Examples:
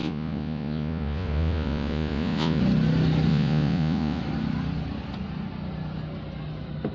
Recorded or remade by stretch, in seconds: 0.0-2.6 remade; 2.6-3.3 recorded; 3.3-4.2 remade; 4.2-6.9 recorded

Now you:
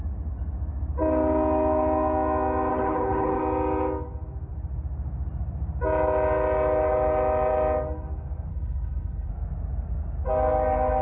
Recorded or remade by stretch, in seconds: 0.0-2.7 recorded; 2.7-3.4 remade; 3.4-8.5 recorded; 8.5-9.3 remade; 9.3-11.0 recorded

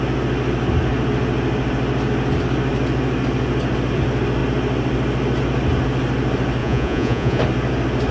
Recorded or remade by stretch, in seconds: 0.0-6.6 recorded; 6.6-7.4 remade; 7.4-8.1 recorded

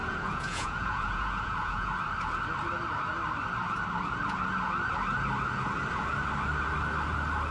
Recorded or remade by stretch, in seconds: 0.0-1.9 remade; 1.9-7.5 recorded

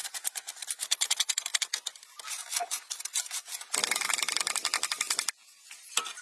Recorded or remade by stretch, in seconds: 0.0-6.2 recorded

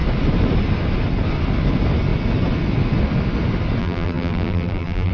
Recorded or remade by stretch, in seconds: 0.0-3.8 recorded; 3.8-5.1 remade

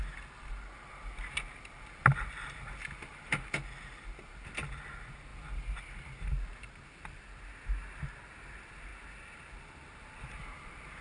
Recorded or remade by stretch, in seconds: 0.0-11.0 recorded